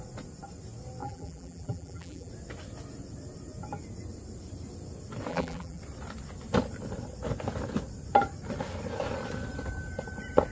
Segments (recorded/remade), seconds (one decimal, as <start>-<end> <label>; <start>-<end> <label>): 0.0-1.0 recorded; 1.0-2.3 remade; 2.3-5.3 recorded; 5.3-5.8 remade; 5.8-10.5 recorded